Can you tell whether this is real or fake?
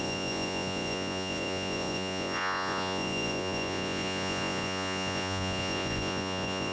fake